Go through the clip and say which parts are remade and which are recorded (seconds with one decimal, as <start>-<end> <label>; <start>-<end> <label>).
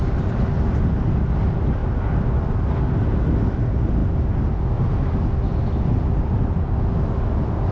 0.0-7.7 recorded